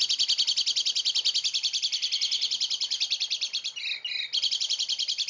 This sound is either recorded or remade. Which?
recorded